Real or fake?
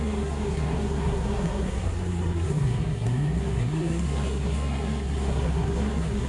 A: fake